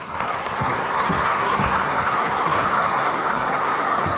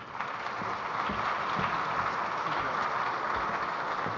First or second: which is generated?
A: first